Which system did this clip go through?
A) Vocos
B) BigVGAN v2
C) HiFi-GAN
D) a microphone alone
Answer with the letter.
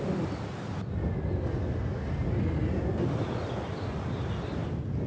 D